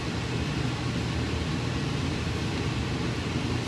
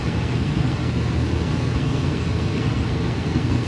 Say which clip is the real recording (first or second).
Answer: first